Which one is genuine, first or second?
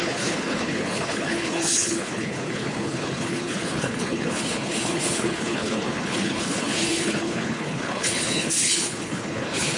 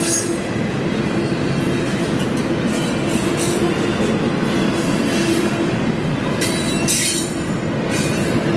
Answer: second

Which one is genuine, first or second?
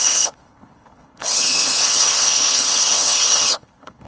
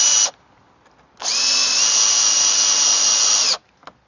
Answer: second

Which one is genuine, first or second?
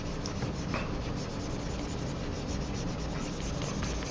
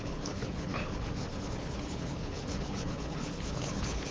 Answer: first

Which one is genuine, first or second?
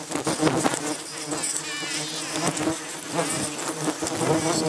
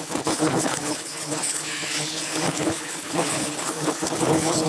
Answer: first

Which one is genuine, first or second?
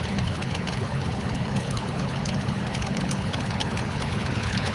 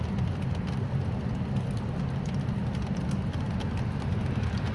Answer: second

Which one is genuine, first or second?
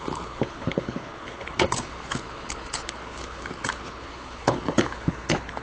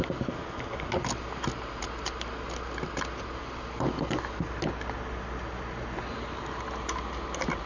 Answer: second